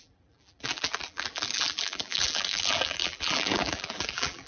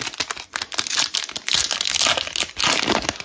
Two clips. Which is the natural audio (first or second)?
second